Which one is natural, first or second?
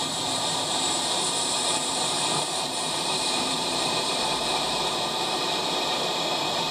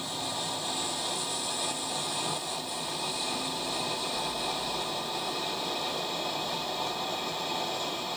second